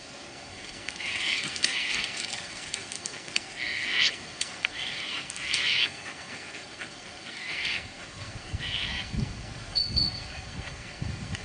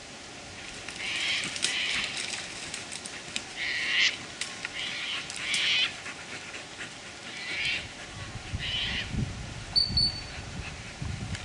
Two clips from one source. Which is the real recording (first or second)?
second